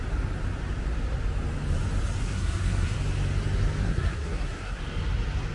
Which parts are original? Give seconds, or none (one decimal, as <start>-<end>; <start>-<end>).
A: 0.0-2.2; 3.0-3.8; 4.8-5.5